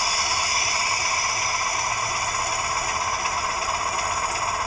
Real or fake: real